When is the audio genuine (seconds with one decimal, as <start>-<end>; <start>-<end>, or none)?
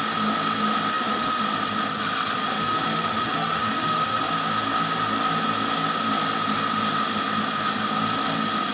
0.0-0.9; 1.4-2.5; 4.2-8.7